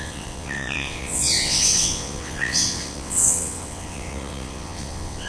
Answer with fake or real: fake